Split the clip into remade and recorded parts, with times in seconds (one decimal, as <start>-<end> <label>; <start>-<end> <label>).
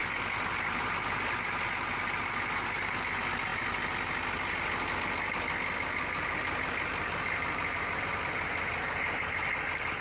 0.0-10.0 recorded